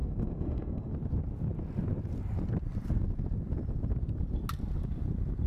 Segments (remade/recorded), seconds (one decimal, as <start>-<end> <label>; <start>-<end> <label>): 0.0-0.9 remade; 0.9-5.5 recorded